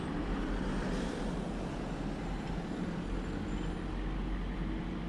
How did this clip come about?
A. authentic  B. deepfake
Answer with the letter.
A